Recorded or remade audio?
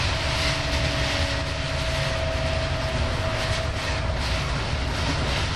recorded